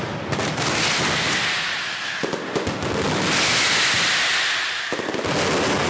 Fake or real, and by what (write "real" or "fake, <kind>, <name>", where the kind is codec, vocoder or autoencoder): real